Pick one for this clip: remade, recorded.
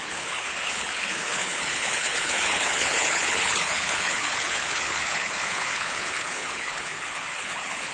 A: remade